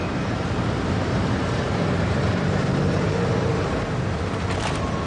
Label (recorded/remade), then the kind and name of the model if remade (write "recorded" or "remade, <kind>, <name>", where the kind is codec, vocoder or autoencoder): remade, vocoder, BigVGAN v2